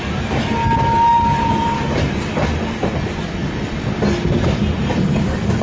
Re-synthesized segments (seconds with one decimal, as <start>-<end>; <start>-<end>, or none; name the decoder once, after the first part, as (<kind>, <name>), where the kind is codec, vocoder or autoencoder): none